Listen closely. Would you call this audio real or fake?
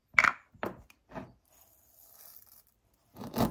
real